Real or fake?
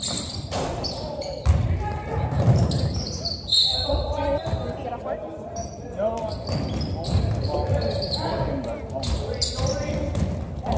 real